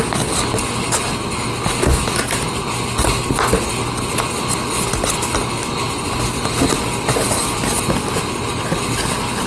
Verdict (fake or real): real